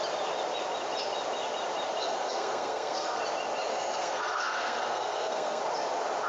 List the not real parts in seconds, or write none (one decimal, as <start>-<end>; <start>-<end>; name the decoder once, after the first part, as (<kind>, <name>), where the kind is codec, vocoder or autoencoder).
2.0-3.2 (codec, SNAC); 3.7-5.6